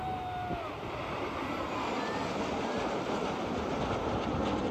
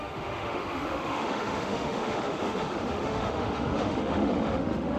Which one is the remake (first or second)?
second